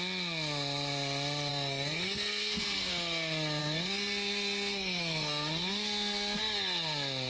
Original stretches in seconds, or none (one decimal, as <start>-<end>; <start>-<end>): 0.0-1.5; 2.9-3.6; 6.4-7.3